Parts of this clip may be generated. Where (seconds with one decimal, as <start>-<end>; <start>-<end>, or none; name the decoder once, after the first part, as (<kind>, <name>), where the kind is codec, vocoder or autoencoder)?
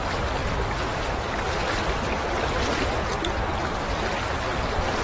none